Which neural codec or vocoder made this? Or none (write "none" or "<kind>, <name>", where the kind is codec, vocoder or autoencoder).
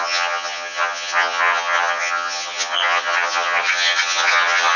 vocoder, HiFi-GAN